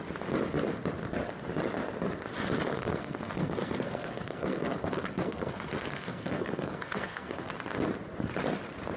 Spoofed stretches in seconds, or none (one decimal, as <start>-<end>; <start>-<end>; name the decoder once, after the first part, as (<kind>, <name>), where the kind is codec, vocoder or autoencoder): 2.7-7.5 (codec, SNAC)